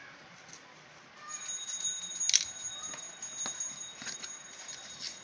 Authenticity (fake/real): real